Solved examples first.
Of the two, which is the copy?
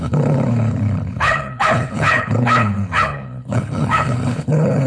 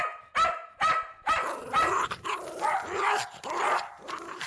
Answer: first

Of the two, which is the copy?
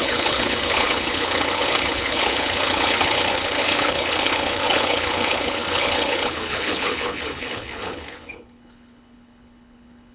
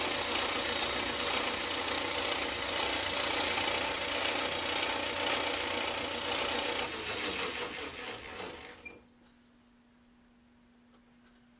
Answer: first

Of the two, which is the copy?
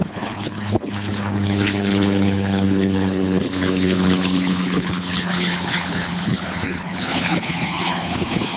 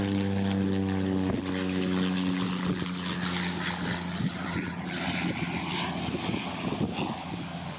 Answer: first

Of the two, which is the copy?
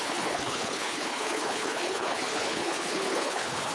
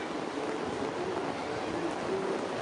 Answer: first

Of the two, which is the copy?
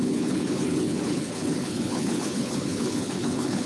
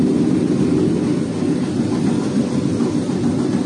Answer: first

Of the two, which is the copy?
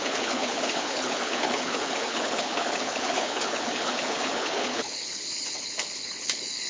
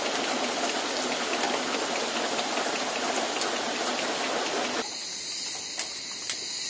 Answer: first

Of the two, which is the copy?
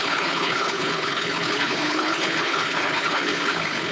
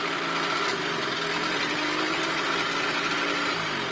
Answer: first